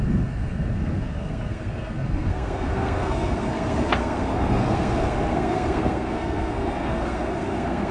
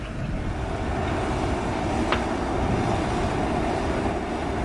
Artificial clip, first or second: first